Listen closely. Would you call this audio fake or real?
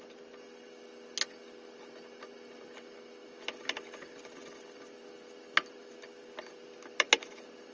real